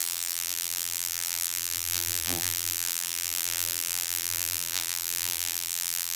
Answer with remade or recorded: remade